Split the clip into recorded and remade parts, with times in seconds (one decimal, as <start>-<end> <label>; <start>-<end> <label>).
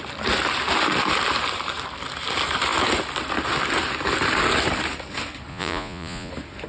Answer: 0.0-5.5 recorded; 5.5-6.3 remade; 6.3-6.7 recorded